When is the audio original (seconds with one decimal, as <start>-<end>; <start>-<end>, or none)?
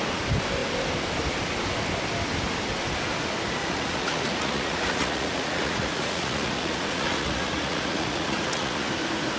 0.0-3.6; 8.9-9.4